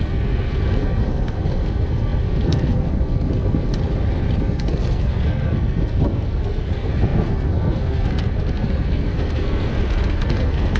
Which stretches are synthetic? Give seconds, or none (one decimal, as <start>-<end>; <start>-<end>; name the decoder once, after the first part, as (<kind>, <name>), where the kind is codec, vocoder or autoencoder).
0.0-3.7 (codec, SNAC); 4.4-10.8